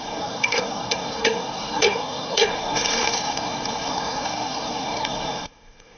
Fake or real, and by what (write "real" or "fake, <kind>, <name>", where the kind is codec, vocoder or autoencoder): fake, codec, SNAC